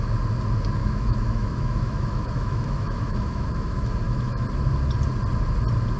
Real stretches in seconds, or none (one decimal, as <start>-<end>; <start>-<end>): 0.0-0.8; 4.4-6.0